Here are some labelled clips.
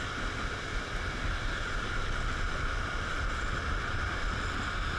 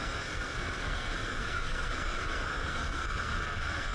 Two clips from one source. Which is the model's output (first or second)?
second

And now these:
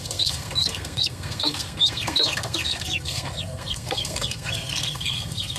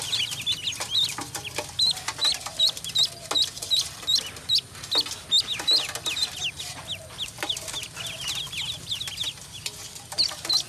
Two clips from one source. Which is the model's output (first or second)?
first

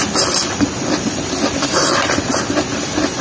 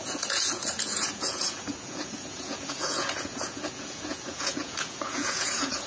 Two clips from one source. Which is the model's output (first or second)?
second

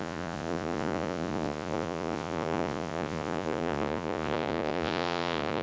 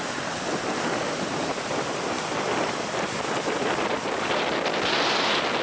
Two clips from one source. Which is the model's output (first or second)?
first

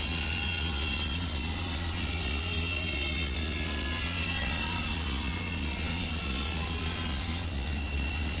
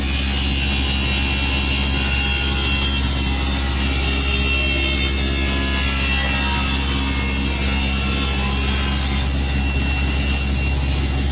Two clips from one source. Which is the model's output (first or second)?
first